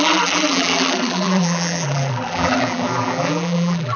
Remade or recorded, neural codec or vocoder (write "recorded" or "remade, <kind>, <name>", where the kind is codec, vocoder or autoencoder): remade, vocoder, BigVGAN v2